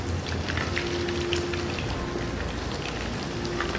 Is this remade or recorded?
recorded